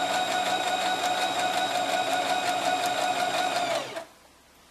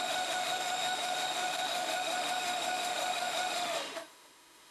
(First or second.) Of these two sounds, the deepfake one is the second